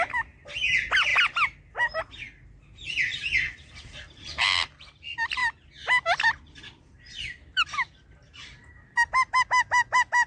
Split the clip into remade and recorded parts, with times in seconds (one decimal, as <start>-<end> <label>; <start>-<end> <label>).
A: 0.0-10.3 recorded